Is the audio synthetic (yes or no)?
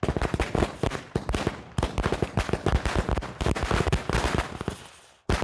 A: no